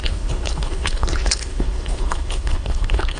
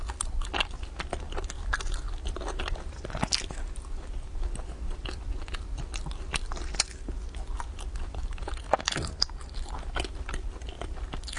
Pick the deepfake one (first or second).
first